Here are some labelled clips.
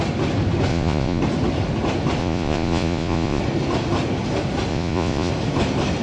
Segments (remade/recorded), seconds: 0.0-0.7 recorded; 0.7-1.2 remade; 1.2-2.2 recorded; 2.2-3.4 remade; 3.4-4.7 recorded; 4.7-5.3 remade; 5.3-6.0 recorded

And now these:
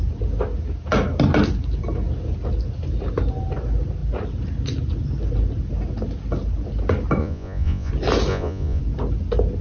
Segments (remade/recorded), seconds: 0.0-7.2 recorded; 7.2-7.9 remade; 7.9-8.3 recorded; 8.3-8.8 remade; 8.8-9.6 recorded